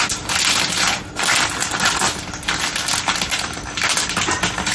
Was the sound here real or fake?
real